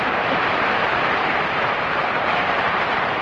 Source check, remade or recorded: remade